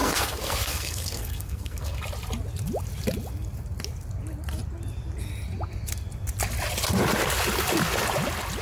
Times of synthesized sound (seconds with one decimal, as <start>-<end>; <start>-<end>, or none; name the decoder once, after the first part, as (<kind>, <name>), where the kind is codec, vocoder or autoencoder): 0.0-2.0 (codec, SNAC)